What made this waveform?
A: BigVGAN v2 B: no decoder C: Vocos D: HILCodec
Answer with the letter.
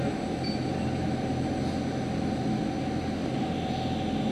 B